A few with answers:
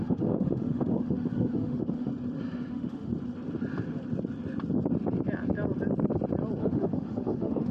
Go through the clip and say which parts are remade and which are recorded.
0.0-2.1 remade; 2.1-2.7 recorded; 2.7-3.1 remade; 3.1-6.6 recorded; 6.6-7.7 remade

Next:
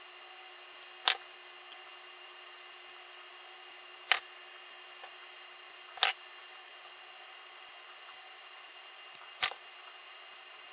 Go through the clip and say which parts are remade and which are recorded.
0.0-10.7 recorded

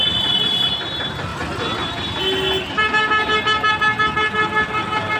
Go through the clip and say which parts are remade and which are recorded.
0.0-5.2 recorded

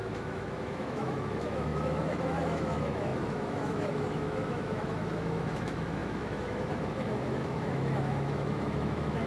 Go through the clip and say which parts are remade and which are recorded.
0.0-9.3 remade

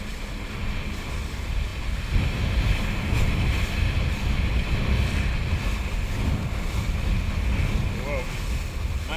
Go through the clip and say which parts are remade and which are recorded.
0.0-9.2 recorded